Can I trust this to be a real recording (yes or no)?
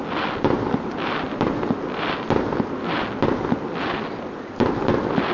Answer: yes